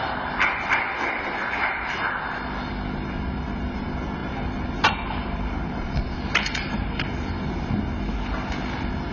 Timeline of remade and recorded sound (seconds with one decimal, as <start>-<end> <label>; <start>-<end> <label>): 0.0-4.2 recorded; 4.2-5.9 remade; 5.9-9.1 recorded